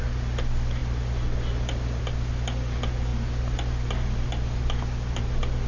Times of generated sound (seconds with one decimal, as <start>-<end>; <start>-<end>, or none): none